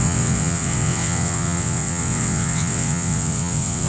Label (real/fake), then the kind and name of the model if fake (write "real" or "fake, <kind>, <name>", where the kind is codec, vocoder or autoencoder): fake, vocoder, WaveNeXt